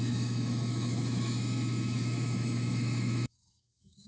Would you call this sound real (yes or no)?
no